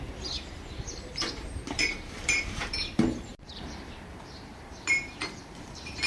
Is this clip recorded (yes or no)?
no